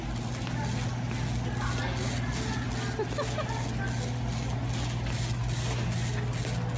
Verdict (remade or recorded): recorded